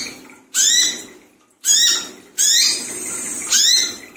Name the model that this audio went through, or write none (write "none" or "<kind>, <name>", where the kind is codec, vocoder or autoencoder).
none